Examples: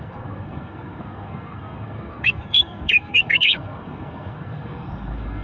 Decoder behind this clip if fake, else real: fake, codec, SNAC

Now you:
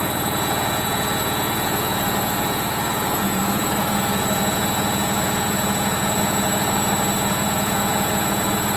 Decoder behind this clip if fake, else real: fake, vocoder, Vocos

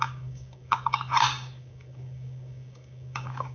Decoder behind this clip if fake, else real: fake, codec, DAC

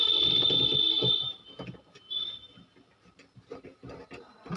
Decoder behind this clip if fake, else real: fake, vocoder, BigVGAN v2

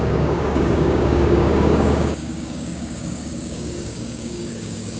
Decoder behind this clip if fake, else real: fake, codec, DAC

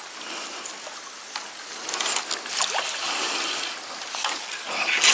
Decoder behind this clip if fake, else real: real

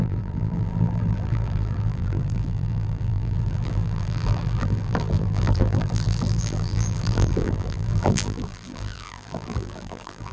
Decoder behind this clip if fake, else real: fake, vocoder, BigVGAN v2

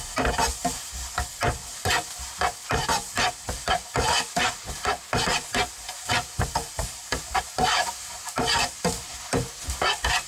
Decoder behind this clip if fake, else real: real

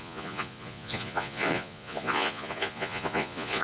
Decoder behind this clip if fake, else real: fake, vocoder, Vocos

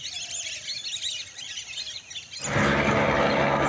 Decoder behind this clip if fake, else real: real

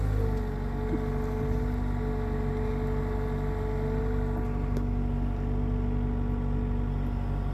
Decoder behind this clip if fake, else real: real